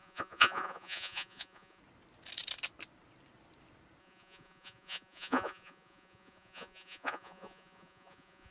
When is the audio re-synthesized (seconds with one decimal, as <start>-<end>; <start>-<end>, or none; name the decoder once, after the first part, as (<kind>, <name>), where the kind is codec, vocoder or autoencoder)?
0.0-1.8 (vocoder, Vocos); 4.0-8.5